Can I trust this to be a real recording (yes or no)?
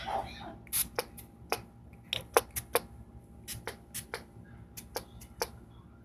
yes